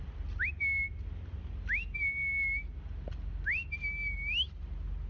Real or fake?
real